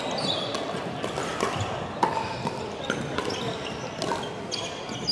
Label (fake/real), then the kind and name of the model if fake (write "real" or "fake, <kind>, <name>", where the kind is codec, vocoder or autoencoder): real